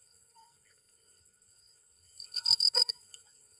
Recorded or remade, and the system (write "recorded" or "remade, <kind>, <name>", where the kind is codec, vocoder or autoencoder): remade, codec, SNAC